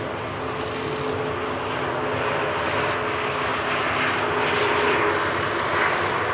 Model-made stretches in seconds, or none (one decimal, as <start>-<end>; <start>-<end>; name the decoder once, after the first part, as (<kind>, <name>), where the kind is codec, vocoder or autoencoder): none